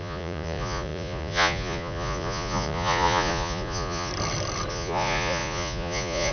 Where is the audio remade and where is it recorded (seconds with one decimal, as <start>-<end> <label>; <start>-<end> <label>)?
0.0-4.1 remade; 4.1-4.7 recorded; 4.7-6.3 remade